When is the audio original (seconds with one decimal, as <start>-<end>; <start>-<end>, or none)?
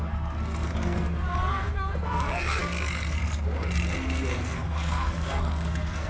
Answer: none